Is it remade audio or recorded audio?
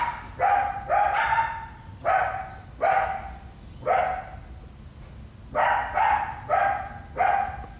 recorded